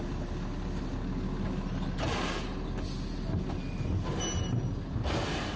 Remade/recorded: recorded